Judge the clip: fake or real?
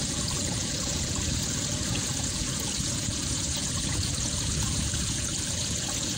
fake